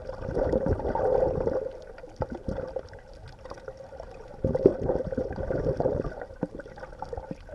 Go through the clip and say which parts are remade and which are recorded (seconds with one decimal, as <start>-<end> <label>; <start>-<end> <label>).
0.0-1.1 remade; 1.1-4.7 recorded; 4.7-5.4 remade; 5.4-7.5 recorded